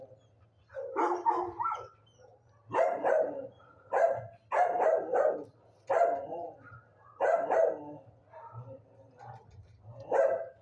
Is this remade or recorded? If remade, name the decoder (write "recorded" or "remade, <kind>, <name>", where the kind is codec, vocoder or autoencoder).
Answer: remade, vocoder, BigVGAN v2